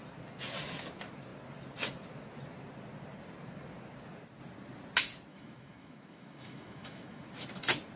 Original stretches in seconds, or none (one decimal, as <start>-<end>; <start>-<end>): 0.0-5.3; 7.3-8.0